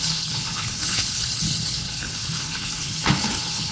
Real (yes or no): no